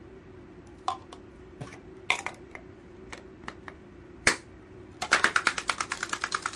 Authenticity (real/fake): fake